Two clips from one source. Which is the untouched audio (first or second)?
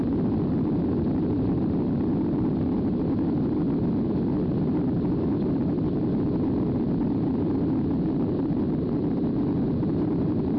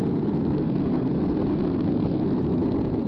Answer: first